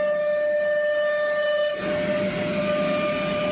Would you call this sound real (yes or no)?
yes